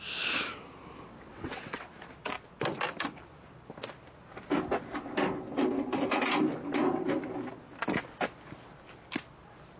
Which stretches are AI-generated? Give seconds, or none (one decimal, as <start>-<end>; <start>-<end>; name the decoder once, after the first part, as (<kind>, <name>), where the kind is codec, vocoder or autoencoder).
1.3-1.9 (vocoder, WaveNeXt)